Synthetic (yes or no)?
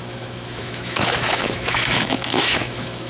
yes